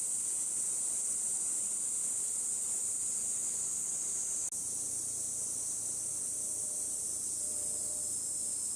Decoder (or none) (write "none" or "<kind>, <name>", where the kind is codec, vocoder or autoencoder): none